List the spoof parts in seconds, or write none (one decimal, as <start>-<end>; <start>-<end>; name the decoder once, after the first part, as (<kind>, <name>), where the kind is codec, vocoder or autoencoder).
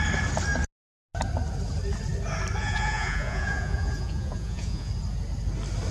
2.6-4.9 (vocoder, Vocos)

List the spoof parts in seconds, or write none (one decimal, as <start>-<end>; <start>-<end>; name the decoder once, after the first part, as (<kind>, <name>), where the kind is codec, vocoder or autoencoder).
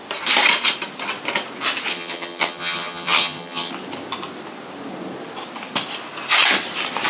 1.9-3.7 (vocoder, HiFi-GAN)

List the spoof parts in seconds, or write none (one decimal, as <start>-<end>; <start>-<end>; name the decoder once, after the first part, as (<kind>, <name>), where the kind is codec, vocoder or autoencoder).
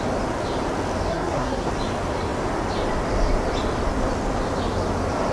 1.1-1.7 (codec, SNAC)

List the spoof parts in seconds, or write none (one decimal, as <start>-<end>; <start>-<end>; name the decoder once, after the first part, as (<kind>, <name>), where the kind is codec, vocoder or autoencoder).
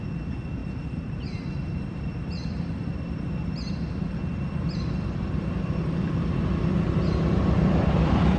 0.6-1.2 (vocoder, BigVGAN v2)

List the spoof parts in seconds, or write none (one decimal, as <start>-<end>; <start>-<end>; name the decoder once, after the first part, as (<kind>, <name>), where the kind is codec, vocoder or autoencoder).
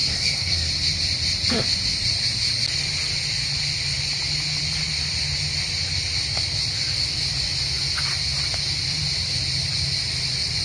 0.0-0.7 (codec, SNAC)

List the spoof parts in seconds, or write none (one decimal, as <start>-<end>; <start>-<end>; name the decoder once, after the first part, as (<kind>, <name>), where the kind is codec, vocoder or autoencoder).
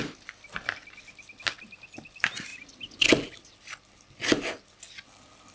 none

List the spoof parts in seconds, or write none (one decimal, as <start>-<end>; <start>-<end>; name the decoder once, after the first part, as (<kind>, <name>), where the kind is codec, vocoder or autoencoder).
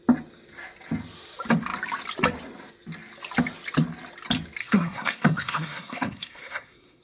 4.6-7.0 (codec, SNAC)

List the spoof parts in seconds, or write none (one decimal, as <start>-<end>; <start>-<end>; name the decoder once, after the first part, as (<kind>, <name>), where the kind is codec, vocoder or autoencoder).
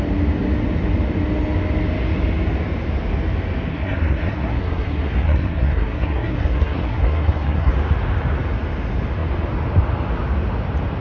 3.7-7.7 (codec, SNAC)